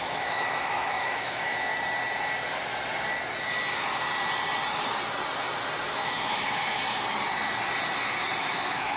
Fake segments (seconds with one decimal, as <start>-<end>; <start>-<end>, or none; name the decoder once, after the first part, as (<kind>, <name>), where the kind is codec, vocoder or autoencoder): 0.0-1.7 (autoencoder, DAC-VAE); 5.9-6.8; 8.4-9.0